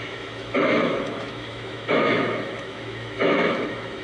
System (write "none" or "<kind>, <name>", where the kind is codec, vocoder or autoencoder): autoencoder, DAC-VAE